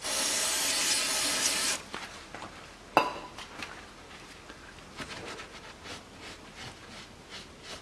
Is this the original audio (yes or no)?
yes